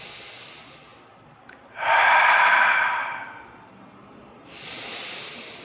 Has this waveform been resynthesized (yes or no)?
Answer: no